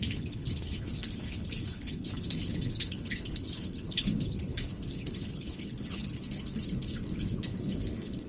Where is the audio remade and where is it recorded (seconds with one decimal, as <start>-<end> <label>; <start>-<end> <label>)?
0.0-8.3 remade